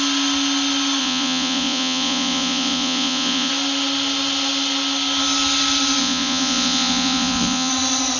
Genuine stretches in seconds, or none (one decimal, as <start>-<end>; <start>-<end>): 0.0-1.0; 3.5-6.0; 7.7-8.2